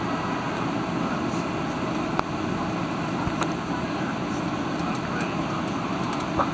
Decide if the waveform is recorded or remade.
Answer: recorded